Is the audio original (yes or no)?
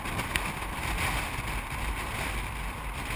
yes